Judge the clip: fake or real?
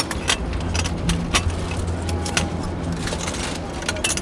real